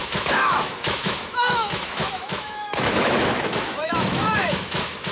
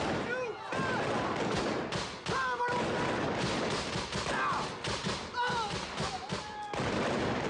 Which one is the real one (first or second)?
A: second